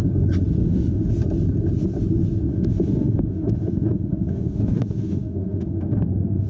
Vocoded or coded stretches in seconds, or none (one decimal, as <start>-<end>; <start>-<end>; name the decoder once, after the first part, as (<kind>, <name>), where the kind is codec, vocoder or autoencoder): 0.6-1.1 (autoencoder, DAC-VAE); 2.5-6.5